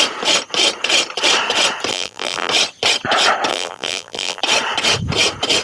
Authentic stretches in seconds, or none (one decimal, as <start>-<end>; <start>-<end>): 0.0-1.9; 2.5-3.5; 4.4-5.6